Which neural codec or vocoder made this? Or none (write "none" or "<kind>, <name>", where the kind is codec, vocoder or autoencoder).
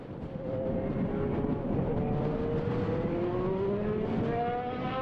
none